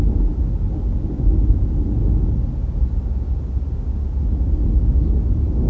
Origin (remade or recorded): recorded